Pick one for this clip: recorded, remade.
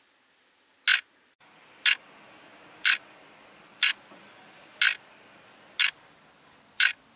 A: recorded